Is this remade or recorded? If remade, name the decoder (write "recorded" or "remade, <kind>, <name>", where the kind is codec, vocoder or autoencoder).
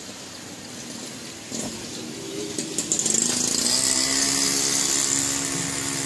recorded